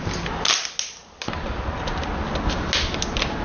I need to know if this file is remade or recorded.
recorded